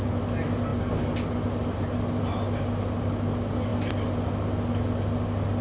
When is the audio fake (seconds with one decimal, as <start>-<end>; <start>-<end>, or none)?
none